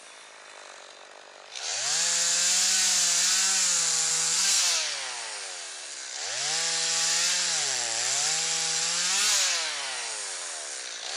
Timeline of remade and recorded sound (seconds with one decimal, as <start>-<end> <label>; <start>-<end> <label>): 0.0-4.1 recorded; 4.1-4.6 remade; 4.6-11.2 recorded